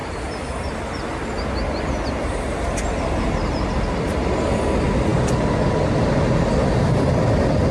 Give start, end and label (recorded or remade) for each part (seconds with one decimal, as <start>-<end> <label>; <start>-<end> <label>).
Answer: 0.0-0.9 remade; 0.9-7.7 recorded